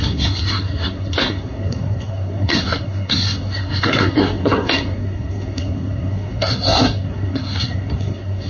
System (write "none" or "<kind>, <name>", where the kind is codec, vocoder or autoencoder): codec, SNAC